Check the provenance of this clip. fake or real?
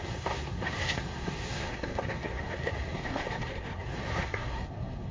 fake